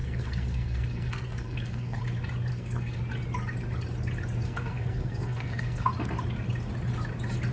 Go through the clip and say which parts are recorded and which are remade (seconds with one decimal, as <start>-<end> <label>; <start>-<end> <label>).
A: 0.0-2.0 remade; 2.0-2.5 recorded; 2.5-3.0 remade; 3.0-4.4 recorded; 4.4-5.9 remade; 5.9-7.5 recorded

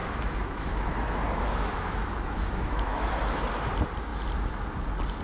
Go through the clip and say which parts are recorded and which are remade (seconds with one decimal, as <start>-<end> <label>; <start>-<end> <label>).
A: 0.0-3.1 remade; 3.1-5.2 recorded

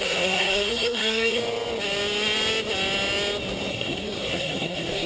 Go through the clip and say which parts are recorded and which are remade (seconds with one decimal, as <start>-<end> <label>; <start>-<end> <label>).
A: 0.0-1.4 remade; 1.4-3.7 recorded; 3.7-5.1 remade

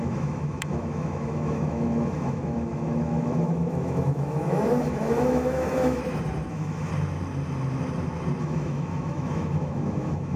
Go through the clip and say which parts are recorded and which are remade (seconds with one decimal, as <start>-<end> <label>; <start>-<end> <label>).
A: 0.0-6.0 remade; 6.0-6.5 recorded; 6.5-6.9 remade; 6.9-8.4 recorded; 8.4-10.4 remade

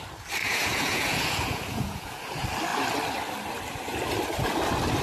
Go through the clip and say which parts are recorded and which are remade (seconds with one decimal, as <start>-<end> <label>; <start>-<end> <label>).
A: 0.0-0.4 recorded; 0.4-2.2 remade; 2.2-5.0 recorded

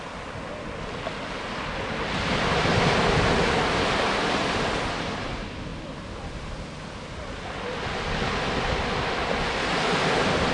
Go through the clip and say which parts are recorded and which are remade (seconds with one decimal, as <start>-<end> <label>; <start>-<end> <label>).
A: 0.0-10.5 recorded

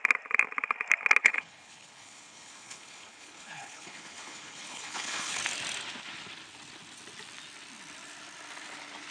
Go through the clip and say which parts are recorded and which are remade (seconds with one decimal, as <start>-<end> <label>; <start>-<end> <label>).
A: 0.0-1.2 recorded; 1.2-5.4 remade; 5.4-9.1 recorded

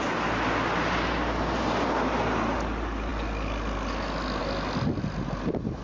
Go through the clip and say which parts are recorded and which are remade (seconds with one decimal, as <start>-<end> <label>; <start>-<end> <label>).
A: 0.0-5.8 recorded